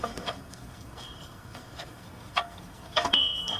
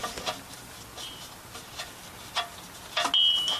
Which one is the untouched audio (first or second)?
second